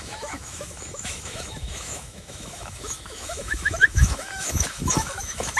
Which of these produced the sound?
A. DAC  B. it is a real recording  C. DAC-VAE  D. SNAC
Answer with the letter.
C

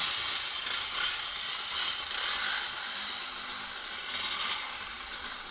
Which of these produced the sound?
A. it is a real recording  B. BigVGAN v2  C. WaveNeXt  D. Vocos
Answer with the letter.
A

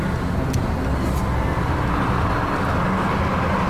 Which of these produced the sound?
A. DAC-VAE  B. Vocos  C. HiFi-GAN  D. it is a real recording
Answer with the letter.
D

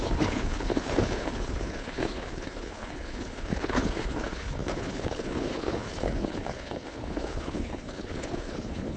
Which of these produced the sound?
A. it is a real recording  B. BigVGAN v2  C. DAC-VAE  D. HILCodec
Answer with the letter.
D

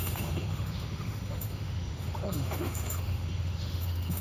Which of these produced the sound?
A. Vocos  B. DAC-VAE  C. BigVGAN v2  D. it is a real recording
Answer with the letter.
B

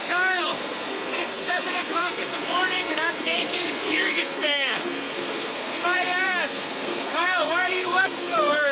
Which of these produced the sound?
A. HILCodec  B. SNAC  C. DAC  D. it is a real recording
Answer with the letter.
B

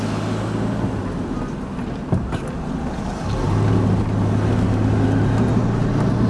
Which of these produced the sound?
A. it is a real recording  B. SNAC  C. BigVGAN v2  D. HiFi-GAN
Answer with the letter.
A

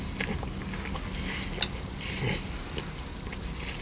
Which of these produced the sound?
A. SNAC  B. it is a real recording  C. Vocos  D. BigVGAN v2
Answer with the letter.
B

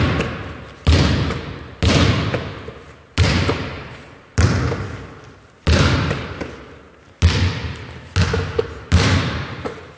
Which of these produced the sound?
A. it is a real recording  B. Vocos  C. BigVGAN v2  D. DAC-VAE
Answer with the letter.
A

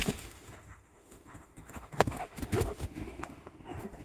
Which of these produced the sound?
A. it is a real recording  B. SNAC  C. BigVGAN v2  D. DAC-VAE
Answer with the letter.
D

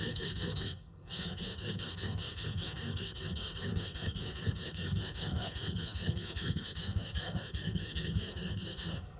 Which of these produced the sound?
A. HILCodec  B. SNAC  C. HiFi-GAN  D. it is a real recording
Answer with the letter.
B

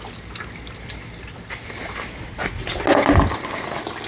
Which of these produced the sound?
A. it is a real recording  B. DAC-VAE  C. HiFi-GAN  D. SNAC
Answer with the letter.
A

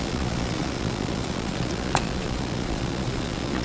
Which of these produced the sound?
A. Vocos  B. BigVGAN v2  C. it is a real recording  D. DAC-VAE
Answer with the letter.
A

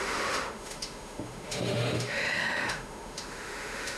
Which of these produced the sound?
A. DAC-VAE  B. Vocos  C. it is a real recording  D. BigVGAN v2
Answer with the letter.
A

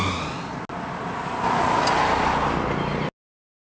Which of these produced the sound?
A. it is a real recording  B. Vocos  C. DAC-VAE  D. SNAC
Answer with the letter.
A